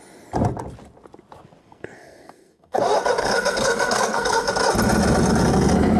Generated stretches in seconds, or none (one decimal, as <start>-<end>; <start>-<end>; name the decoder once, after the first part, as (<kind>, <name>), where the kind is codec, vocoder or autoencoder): 1.6-2.8 (codec, SNAC); 3.2-4.5